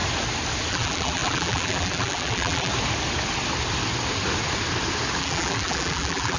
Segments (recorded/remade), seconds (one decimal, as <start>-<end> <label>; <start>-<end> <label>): 0.0-0.7 recorded; 0.7-2.7 remade; 2.7-5.2 recorded; 5.2-6.4 remade

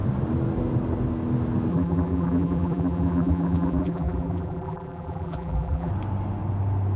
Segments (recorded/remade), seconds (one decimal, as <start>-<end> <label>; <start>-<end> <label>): 0.0-1.7 recorded; 1.7-5.9 remade; 5.9-7.0 recorded